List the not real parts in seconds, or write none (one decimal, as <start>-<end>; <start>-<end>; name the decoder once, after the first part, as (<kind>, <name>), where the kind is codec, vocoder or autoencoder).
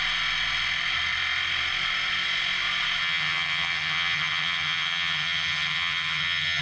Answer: 3.0-6.6 (vocoder, HiFi-GAN)